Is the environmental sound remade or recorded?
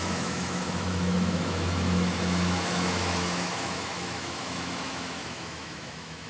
remade